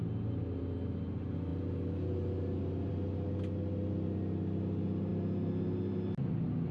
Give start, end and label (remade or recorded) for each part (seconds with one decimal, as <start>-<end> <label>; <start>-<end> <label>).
0.0-6.7 recorded